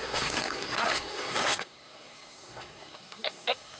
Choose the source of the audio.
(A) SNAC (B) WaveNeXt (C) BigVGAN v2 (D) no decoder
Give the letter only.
A